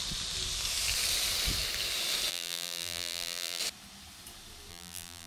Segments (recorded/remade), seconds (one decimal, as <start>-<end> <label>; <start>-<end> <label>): 0.0-2.3 recorded; 2.3-3.6 remade; 3.6-4.7 recorded; 4.7-5.3 remade